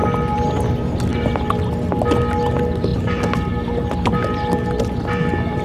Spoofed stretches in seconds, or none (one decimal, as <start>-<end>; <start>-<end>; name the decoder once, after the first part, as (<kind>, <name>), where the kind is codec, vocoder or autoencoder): 1.1-1.9 (vocoder, BigVGAN v2); 2.9-4.9